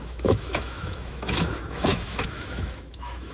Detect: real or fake fake